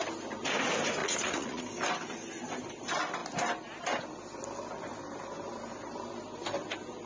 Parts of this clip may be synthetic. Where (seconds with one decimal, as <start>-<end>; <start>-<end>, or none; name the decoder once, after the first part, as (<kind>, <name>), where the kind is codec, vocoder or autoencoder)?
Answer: 1.0-1.6 (vocoder, Vocos)